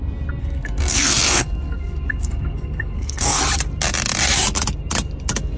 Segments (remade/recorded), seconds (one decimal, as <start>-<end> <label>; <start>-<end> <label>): 0.0-0.4 recorded; 0.4-3.4 remade; 3.4-5.6 recorded